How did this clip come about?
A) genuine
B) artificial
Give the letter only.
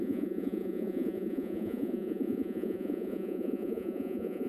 B